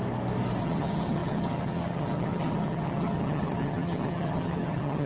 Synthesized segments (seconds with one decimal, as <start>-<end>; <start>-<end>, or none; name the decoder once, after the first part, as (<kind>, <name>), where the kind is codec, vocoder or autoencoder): 0.6-5.1 (vocoder, HiFi-GAN)

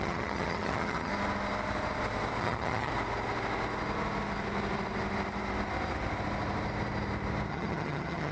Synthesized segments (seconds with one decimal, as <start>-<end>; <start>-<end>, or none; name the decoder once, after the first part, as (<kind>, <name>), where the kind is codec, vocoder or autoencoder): 0.0-1.1 (vocoder, HiFi-GAN); 2.4-2.9; 7.5-8.3

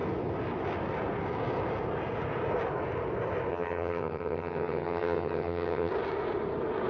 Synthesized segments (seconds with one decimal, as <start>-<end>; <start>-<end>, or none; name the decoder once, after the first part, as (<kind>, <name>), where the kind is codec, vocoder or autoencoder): 3.5-5.9 (vocoder, HiFi-GAN)

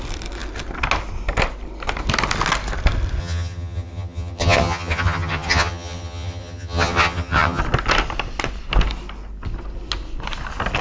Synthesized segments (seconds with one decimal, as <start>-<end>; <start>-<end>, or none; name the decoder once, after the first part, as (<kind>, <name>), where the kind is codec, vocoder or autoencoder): 3.2-7.6 (vocoder, HiFi-GAN)

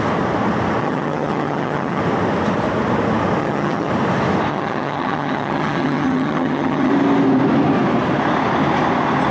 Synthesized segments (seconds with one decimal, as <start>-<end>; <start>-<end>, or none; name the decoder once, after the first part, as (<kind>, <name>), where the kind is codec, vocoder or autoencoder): 0.8-2.0 (vocoder, HiFi-GAN); 3.4-3.9; 4.5-6.9

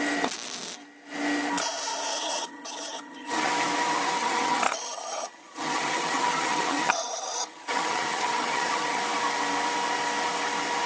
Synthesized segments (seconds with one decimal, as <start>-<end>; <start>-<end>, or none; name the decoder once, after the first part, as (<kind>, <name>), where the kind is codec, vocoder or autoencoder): 2.1-3.5 (vocoder, HiFi-GAN); 4.2-9.0

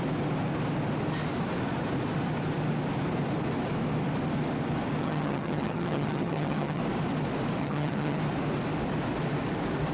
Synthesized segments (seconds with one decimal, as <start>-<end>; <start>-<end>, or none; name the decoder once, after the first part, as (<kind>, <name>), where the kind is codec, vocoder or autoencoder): 5.0-6.8 (vocoder, HiFi-GAN); 7.6-8.2